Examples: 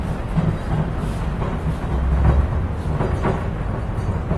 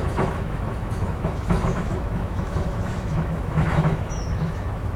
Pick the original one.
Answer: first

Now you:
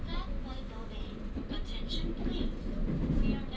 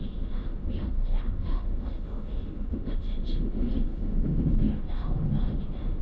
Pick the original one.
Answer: first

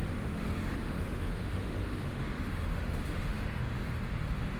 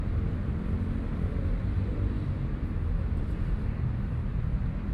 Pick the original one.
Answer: second